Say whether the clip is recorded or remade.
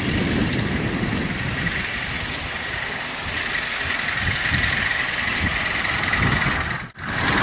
recorded